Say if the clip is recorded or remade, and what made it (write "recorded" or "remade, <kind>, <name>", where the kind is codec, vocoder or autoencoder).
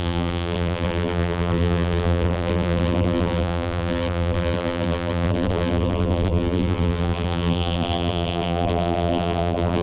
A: remade, vocoder, BigVGAN v2